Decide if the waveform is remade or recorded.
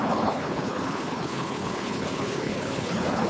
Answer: remade